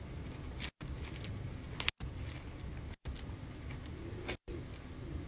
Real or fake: real